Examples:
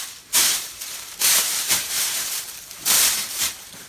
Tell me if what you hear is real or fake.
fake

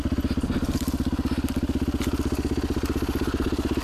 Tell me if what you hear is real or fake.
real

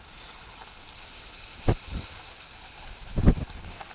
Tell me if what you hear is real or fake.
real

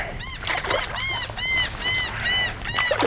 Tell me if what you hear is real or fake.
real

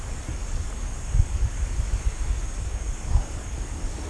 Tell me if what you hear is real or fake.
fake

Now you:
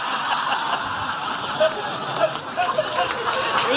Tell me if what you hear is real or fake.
real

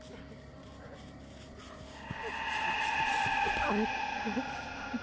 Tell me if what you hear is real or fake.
real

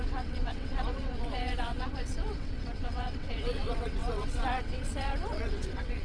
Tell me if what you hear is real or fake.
fake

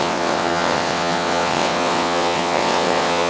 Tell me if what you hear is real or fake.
fake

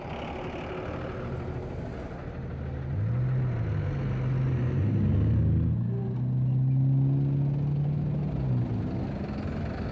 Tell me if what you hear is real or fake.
real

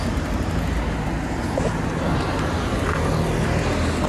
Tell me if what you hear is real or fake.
real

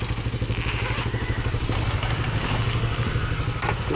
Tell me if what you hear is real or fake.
real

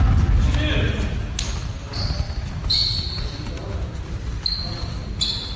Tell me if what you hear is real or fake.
real